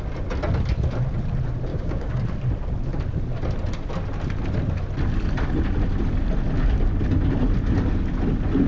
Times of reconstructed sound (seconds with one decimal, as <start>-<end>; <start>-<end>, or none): 1.7-2.2

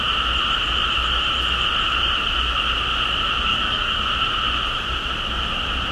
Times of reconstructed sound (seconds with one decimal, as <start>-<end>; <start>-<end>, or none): 3.5-4.0

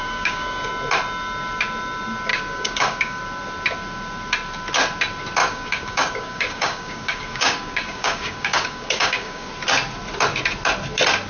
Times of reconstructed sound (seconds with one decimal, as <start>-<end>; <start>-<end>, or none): 0.0-0.7; 2.3-3.2; 5.4-9.5

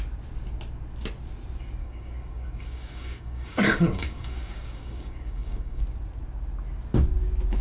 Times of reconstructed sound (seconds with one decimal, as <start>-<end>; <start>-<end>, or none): 1.8-5.8